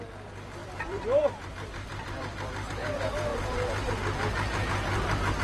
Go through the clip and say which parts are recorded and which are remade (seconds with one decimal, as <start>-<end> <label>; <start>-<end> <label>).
0.0-0.6 recorded; 0.6-2.7 remade; 2.7-5.4 recorded